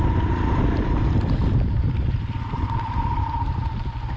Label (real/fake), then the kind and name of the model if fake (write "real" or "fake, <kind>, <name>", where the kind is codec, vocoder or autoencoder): fake, vocoder, BigVGAN v2